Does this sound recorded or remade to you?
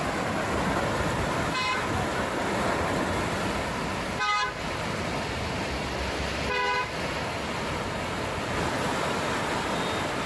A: recorded